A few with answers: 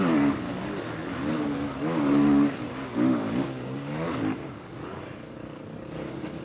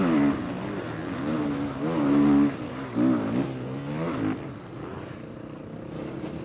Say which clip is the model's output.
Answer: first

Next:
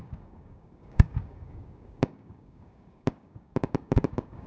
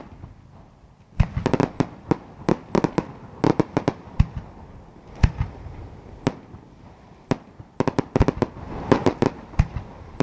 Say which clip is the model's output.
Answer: first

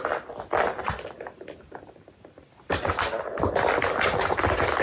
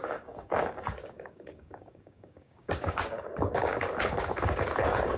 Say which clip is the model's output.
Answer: second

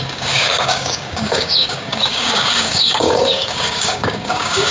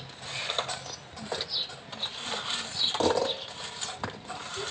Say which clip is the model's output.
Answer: first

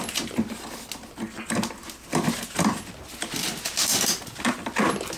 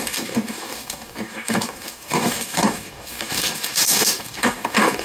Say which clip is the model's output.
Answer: second